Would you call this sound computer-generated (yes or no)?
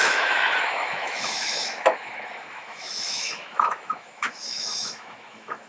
yes